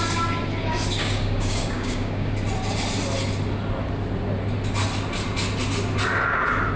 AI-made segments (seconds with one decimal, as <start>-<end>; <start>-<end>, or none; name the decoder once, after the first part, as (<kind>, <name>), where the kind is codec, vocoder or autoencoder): 1.0-2.3 (codec, DAC)